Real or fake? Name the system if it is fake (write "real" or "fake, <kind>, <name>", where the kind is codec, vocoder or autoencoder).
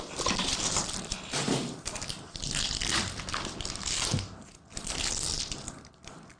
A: real